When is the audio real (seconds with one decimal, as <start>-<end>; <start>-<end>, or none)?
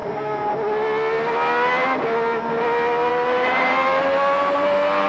0.0-3.1